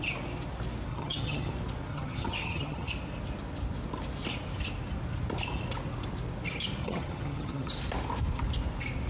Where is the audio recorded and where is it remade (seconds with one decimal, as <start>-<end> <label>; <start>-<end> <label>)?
0.0-0.9 recorded; 0.9-1.5 remade; 1.5-1.9 recorded; 1.9-2.9 remade; 2.9-6.8 recorded; 6.8-7.7 remade; 7.7-9.1 recorded